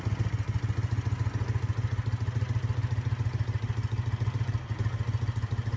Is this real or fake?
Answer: real